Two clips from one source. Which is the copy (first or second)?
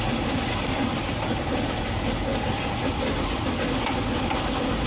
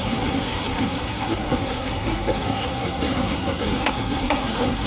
second